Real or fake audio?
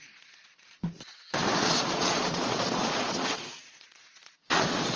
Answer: fake